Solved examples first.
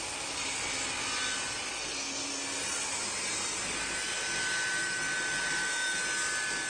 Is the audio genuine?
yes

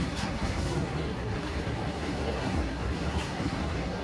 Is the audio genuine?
no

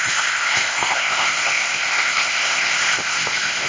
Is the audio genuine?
no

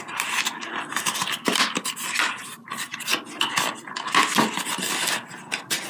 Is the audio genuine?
yes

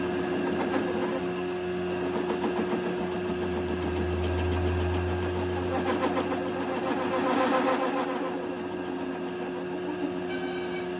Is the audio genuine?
yes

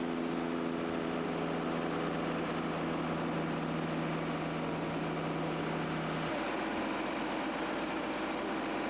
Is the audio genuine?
yes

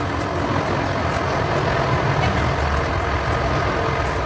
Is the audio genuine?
yes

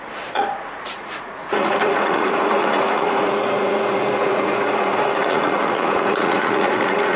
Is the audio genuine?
no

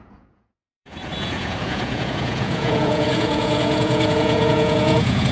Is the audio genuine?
no